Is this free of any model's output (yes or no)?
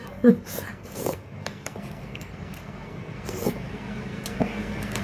no